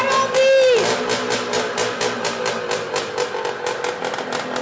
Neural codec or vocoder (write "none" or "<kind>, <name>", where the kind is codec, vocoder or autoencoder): none